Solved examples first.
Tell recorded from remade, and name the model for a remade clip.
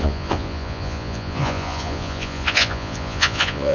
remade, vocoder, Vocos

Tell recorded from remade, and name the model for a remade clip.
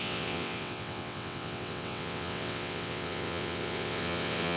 remade, vocoder, WaveNeXt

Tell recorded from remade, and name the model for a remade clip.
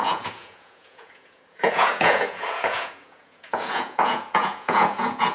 remade, vocoder, Vocos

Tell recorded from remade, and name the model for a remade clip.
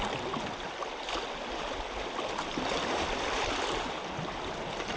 recorded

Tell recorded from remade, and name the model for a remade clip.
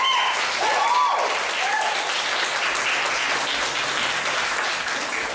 recorded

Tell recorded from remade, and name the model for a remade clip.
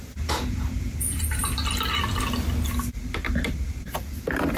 recorded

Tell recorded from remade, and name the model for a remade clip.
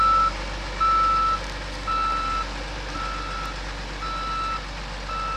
recorded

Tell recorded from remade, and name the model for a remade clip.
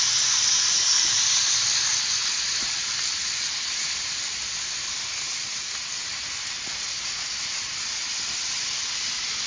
recorded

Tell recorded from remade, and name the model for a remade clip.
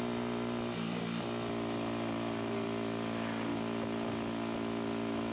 recorded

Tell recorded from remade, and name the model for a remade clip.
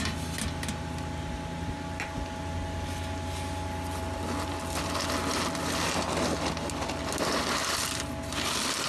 recorded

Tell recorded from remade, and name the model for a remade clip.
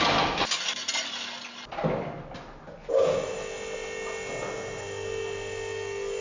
recorded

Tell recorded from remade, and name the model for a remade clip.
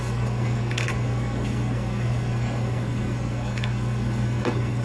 remade, codec, SNAC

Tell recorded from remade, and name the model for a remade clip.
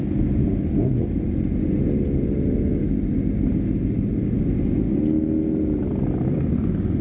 recorded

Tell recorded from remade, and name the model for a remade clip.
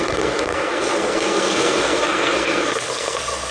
remade, codec, SNAC